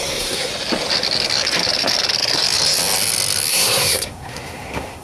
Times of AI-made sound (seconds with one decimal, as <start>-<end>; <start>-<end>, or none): 0.0-0.5; 3.5-5.0